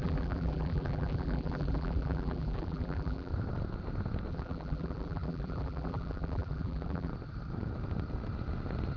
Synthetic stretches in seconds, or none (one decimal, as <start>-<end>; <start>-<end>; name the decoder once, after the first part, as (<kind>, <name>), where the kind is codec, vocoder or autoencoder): 0.0-3.3 (vocoder, BigVGAN v2); 4.3-7.1